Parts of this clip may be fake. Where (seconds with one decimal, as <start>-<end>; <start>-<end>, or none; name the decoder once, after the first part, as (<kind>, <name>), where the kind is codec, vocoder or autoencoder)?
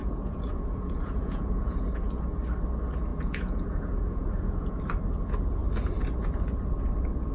0.0-2.2 (vocoder, Vocos); 3.1-4.8